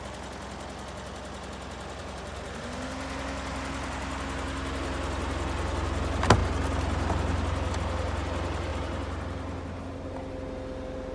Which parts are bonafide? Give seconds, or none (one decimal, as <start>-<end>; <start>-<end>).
0.0-2.0; 2.6-8.7; 10.3-11.1